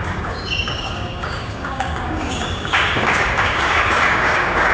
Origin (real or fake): fake